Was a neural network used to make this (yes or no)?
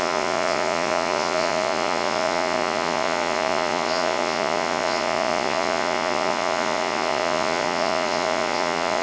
yes